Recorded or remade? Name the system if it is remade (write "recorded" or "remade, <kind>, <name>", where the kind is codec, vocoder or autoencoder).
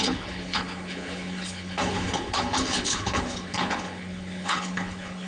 remade, codec, HILCodec